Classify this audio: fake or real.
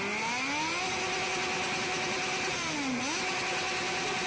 real